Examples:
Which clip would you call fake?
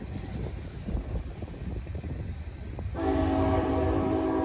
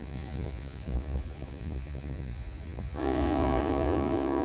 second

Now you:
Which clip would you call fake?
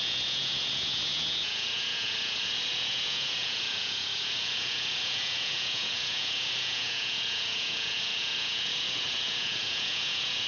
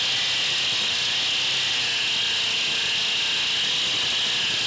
first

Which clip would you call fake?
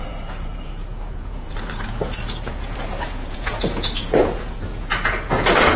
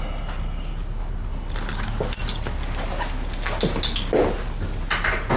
first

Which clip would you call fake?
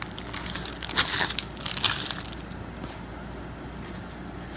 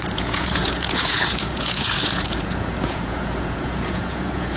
second